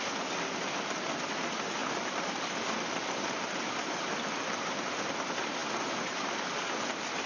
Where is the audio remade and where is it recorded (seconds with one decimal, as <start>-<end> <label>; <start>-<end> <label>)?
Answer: 0.0-7.3 recorded